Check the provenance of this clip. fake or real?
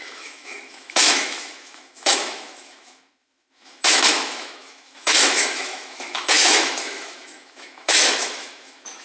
fake